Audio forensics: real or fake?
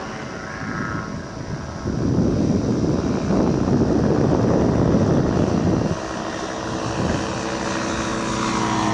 real